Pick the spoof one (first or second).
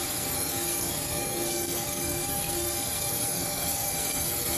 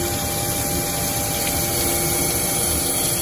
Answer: first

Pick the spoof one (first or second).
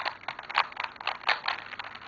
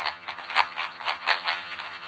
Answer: second